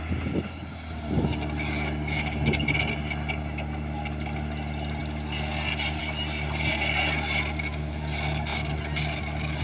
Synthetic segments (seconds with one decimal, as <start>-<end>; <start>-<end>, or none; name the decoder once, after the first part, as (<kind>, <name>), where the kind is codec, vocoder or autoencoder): none